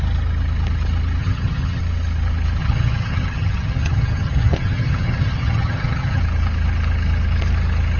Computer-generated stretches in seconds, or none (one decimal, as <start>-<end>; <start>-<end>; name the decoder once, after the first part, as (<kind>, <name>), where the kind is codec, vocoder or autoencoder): 1.2-1.8 (vocoder, HiFi-GAN); 2.6-6.2